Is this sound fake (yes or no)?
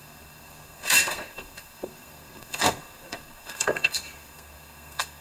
yes